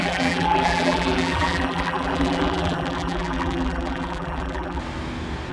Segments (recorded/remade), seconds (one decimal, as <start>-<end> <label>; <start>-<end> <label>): 0.0-4.8 remade; 4.8-5.5 recorded